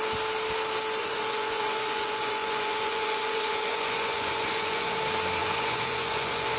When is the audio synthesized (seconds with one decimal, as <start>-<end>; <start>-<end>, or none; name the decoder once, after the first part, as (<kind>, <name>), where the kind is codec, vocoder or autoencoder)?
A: 1.0-5.0 (vocoder, Vocos); 5.4-6.6